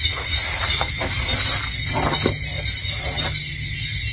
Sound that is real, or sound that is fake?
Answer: real